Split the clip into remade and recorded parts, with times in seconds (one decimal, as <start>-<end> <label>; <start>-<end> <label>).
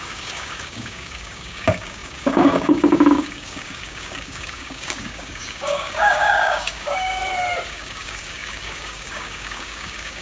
0.0-7.2 remade; 7.2-7.7 recorded; 7.7-10.2 remade